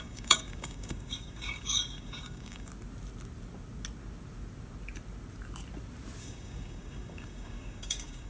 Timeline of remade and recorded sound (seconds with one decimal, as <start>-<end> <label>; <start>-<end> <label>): 0.0-2.7 remade; 2.7-6.2 recorded; 6.2-8.3 remade